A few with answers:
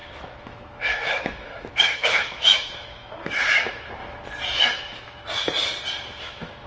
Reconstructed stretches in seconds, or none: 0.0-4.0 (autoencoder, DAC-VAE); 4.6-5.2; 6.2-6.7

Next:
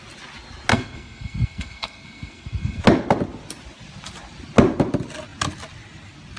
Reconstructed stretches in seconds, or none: 0.7-2.8 (codec, SNAC)

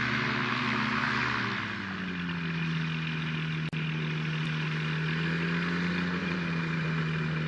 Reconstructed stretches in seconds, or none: 6.2-7.0 (vocoder, BigVGAN v2)

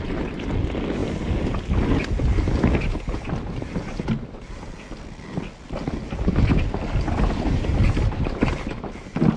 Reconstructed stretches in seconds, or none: none